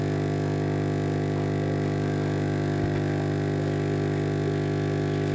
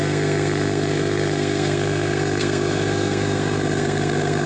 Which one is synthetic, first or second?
second